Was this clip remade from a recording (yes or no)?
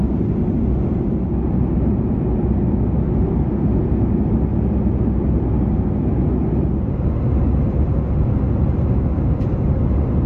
no